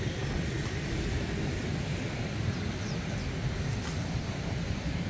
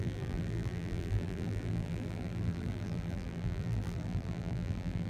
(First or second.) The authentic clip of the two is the first